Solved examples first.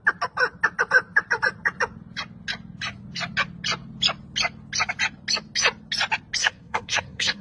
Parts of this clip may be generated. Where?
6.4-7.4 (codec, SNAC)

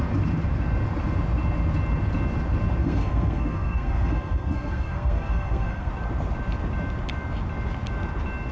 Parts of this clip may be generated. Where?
2.8-5.9 (codec, SNAC)

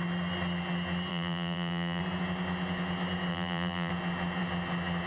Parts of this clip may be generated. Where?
1.1-2.0 (vocoder, BigVGAN v2); 3.3-3.9

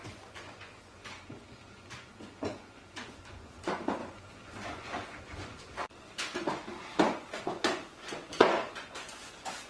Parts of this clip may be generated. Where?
0.0-9.7 (vocoder, Vocos)

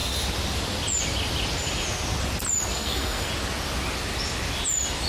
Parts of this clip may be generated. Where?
2.7-3.3 (codec, SNAC)

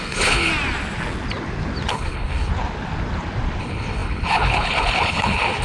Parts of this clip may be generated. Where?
0.0-0.5 (codec, HILCodec); 1.9-2.5; 3.6-5.6

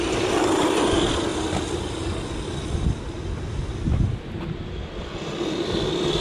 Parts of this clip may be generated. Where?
0.0-1.3 (vocoder, BigVGAN v2); 5.0-6.2

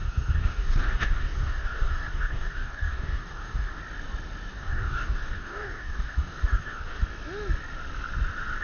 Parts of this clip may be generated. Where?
0.0-3.8 (codec, DAC); 4.5-7.0